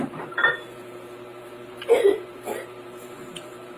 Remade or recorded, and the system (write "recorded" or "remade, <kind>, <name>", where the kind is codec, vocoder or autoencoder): remade, vocoder, BigVGAN v2